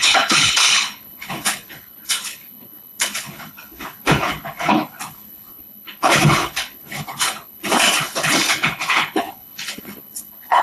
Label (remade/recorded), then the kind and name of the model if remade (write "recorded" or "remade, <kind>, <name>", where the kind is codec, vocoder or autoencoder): remade, codec, HILCodec